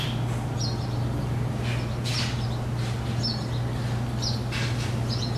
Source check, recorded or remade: recorded